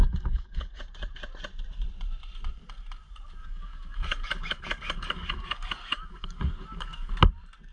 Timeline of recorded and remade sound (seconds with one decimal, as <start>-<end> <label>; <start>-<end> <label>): 0.0-0.8 remade; 0.8-3.4 recorded; 3.4-7.1 remade; 7.1-7.7 recorded